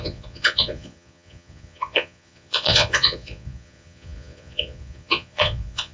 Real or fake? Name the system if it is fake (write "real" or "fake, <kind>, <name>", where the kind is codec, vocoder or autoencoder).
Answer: fake, vocoder, Vocos